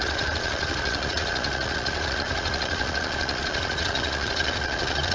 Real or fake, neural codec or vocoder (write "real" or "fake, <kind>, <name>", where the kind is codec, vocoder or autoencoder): fake, vocoder, Vocos